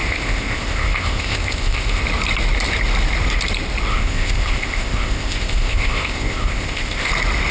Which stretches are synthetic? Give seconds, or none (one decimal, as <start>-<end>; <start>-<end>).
0.0-2.0; 3.9-7.1